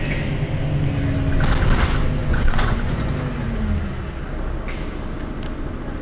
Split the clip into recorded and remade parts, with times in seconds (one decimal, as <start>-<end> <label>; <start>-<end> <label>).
0.0-2.2 recorded; 2.2-3.1 remade; 3.1-6.0 recorded